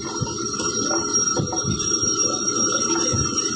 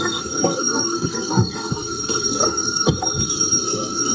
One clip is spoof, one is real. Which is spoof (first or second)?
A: second